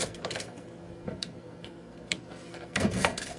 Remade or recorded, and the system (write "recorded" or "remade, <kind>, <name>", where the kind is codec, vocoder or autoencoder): remade, codec, SNAC